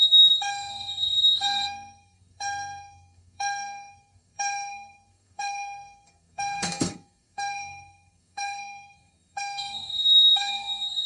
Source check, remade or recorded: remade